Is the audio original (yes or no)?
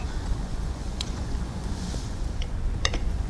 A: no